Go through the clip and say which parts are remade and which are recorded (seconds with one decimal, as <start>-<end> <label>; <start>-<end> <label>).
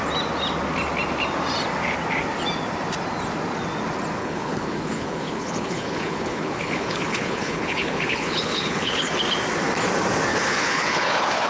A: 0.0-4.2 recorded; 4.2-9.1 remade; 9.1-10.3 recorded; 10.3-11.5 remade